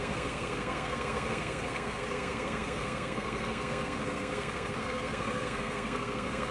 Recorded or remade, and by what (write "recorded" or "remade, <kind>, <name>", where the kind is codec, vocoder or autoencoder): remade, codec, SNAC